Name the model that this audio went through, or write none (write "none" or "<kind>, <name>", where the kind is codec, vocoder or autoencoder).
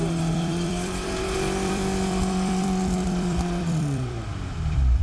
vocoder, BigVGAN v2